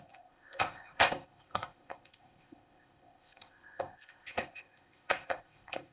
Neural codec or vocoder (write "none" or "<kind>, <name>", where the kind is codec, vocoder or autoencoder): codec, ZipCodec